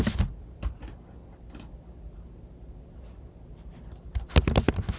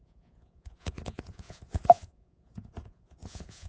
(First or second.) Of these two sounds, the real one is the first